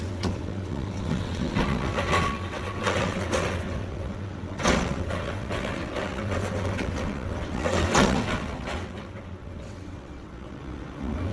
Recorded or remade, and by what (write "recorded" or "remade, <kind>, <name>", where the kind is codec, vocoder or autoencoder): remade, vocoder, WaveNeXt